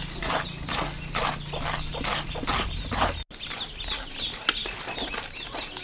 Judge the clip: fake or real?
real